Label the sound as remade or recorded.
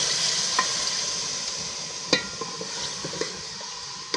recorded